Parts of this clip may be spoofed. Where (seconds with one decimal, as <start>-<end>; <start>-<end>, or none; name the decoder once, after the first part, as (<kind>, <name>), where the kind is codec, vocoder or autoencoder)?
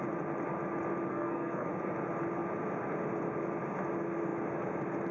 1.1-1.7 (codec, SNAC)